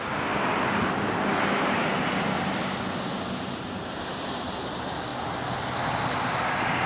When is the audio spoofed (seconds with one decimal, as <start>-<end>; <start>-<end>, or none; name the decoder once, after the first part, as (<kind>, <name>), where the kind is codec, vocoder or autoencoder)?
none